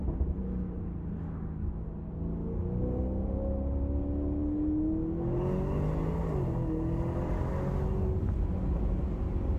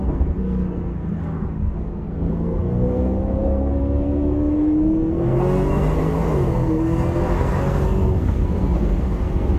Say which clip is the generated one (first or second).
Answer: second